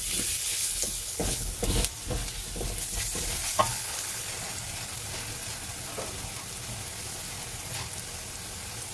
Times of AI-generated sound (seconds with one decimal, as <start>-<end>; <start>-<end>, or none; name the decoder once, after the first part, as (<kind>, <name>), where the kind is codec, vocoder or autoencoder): 0.4-1.5 (codec, HILCodec); 3.7-4.3